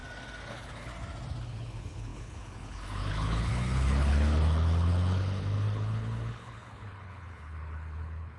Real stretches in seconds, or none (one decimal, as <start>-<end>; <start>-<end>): 0.0-0.5; 0.9-1.4